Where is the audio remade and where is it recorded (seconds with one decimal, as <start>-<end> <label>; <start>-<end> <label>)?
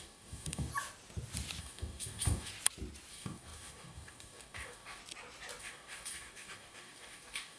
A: 0.0-0.7 remade; 0.7-1.6 recorded; 1.6-2.5 remade; 2.5-3.1 recorded; 3.1-5.0 remade; 5.0-5.6 recorded; 5.6-7.6 remade